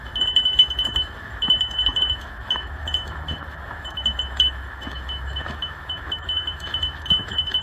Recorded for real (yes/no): no